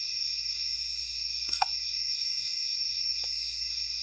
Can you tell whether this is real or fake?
fake